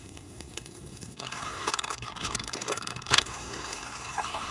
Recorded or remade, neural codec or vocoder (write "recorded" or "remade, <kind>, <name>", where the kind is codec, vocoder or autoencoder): remade, codec, SNAC